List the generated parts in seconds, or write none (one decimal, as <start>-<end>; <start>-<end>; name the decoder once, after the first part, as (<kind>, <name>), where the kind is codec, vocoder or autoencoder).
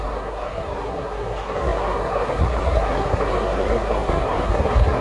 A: 0.0-5.0 (codec, SNAC)